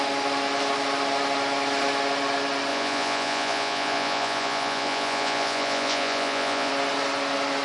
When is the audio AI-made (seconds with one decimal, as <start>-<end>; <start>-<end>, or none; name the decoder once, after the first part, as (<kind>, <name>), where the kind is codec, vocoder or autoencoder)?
2.7-6.7 (vocoder, Vocos)